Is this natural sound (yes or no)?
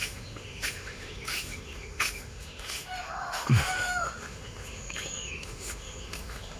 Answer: no